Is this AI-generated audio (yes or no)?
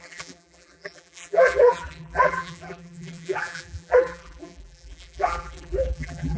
yes